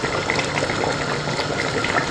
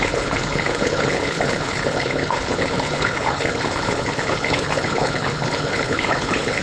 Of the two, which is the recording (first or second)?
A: first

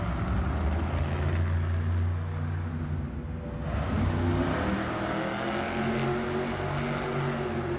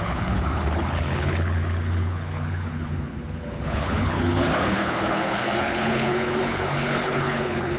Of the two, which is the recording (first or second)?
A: first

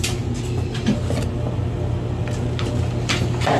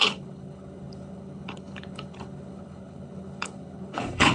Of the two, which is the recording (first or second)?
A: first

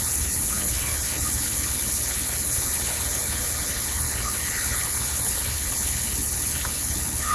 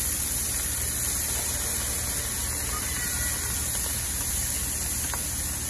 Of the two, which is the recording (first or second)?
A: second